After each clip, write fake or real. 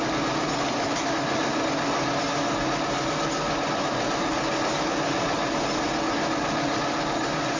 real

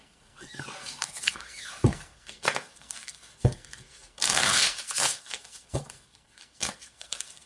fake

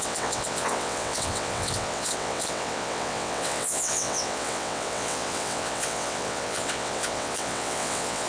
fake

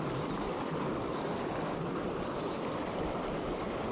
real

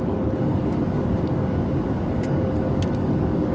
fake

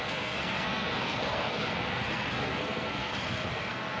fake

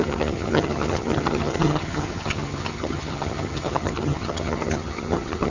fake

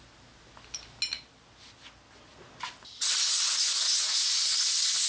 real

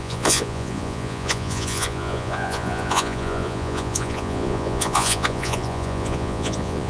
fake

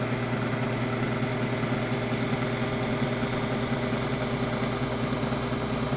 real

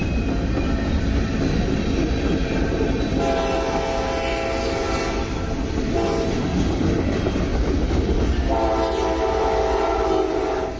real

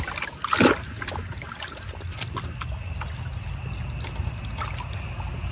real